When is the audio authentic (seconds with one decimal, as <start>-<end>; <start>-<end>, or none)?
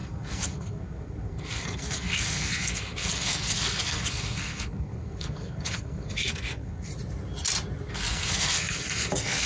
6.9-7.9